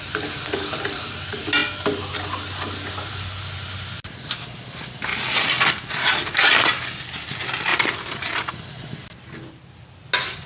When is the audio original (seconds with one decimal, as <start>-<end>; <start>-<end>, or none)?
0.0-10.5